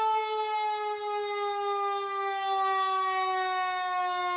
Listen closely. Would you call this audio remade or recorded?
recorded